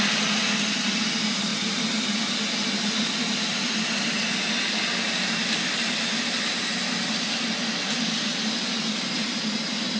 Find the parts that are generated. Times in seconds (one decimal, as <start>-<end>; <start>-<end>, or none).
none